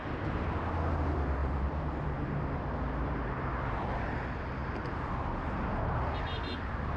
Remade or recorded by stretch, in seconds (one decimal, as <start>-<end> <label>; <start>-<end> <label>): 0.0-1.4 recorded; 1.4-4.0 remade; 4.0-7.0 recorded